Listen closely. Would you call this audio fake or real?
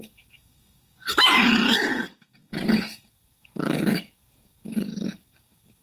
fake